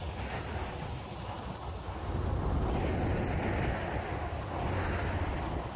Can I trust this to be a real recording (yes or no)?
yes